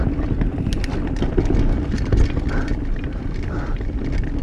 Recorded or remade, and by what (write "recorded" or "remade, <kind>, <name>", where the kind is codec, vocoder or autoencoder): recorded